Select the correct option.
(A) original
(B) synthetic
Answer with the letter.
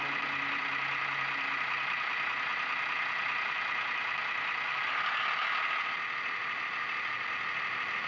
A